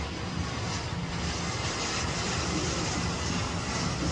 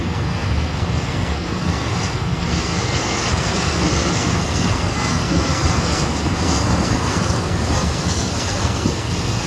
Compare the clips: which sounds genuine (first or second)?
first